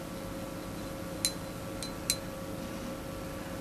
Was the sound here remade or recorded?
recorded